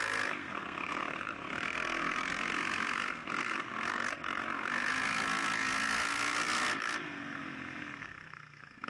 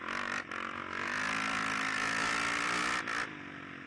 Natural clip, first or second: second